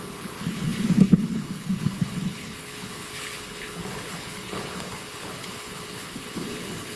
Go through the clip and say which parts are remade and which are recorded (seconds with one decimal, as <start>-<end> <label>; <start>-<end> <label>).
0.0-7.0 remade